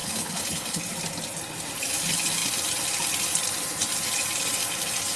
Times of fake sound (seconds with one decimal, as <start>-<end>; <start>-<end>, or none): 0.0-0.8